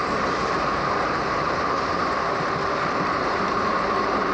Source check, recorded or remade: remade